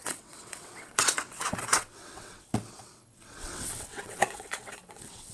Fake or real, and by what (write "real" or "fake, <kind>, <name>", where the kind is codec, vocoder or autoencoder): fake, vocoder, WaveNeXt